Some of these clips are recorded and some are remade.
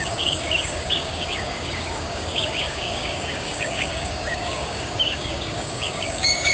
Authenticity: remade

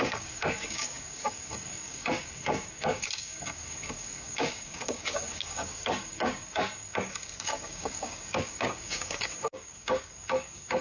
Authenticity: remade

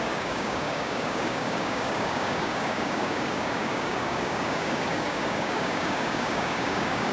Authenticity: remade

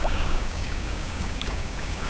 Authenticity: remade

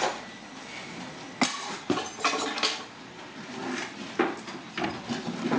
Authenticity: recorded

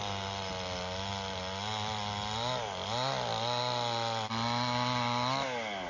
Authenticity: recorded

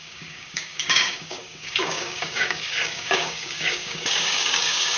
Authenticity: remade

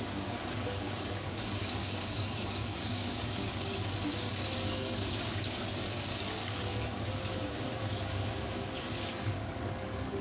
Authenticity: remade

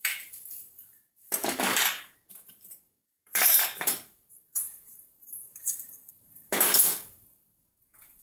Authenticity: remade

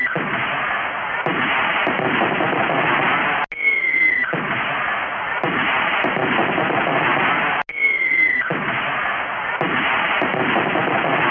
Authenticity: recorded